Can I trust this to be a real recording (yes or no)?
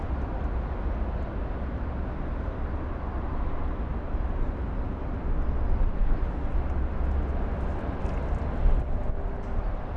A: yes